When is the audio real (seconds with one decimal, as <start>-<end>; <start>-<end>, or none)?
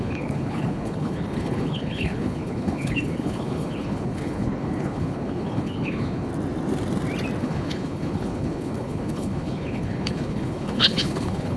6.3-7.4